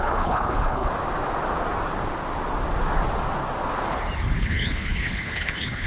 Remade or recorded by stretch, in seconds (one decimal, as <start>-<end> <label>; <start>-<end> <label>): 0.0-0.9 remade; 0.9-4.4 recorded; 4.4-5.9 remade